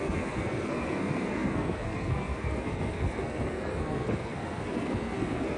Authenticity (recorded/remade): remade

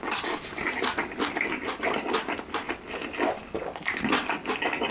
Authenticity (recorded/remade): recorded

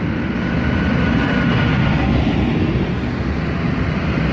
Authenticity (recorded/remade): recorded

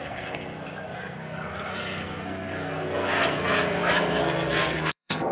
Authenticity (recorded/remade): remade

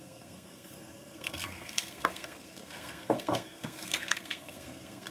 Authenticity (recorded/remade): remade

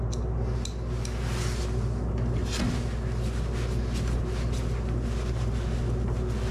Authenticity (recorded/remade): recorded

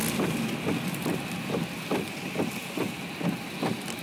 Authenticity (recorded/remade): recorded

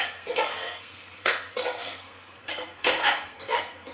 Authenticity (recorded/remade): remade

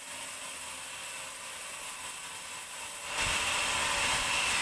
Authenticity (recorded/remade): recorded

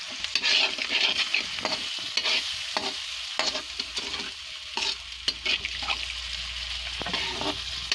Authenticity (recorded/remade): recorded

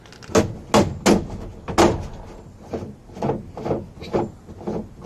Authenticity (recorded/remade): recorded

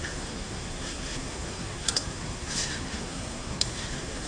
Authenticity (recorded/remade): remade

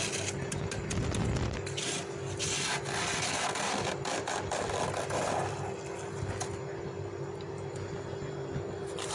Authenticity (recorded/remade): recorded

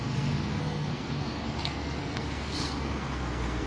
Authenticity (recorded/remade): remade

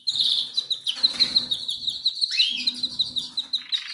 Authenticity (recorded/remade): recorded